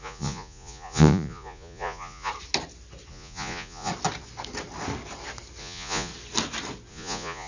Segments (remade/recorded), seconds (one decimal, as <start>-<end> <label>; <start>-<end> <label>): 0.0-2.3 remade; 2.3-3.1 recorded; 3.1-3.9 remade; 3.9-5.6 recorded; 5.6-6.1 remade; 6.1-6.9 recorded; 6.9-7.5 remade